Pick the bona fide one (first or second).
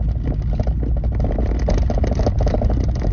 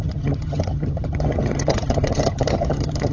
first